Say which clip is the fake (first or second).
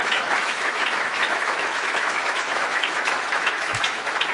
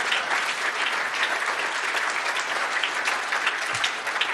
first